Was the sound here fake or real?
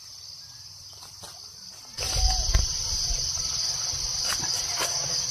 real